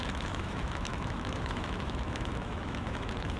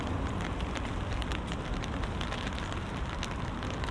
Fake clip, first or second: first